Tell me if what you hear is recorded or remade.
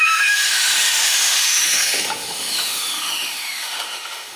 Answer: remade